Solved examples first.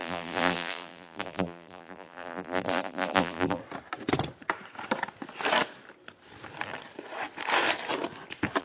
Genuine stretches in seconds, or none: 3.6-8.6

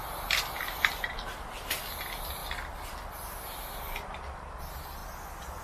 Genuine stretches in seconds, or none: 1.1-2.4; 3.0-5.6

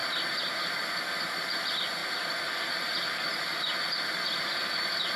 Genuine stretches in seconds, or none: 0.8-2.0